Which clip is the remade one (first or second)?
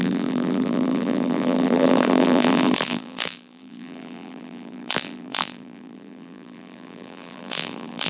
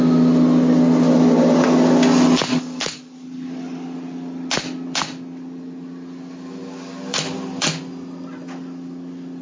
first